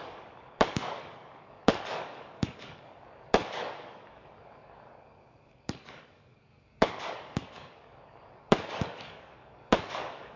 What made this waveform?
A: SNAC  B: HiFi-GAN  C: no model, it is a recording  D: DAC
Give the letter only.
D